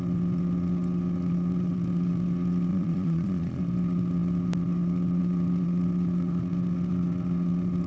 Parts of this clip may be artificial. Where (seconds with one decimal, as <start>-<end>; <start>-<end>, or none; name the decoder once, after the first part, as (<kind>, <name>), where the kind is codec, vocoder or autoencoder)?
2.7-3.6 (vocoder, Vocos)